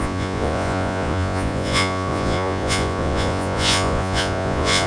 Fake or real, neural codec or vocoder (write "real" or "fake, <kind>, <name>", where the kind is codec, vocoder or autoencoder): fake, vocoder, Vocos